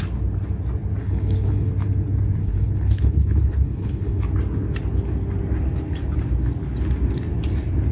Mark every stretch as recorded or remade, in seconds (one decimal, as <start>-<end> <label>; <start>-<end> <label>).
0.0-1.0 recorded; 1.0-1.7 remade; 1.7-2.4 recorded; 2.4-4.2 remade; 4.2-7.9 recorded